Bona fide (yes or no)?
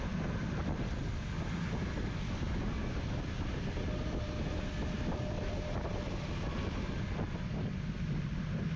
yes